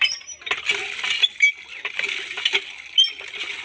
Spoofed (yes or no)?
no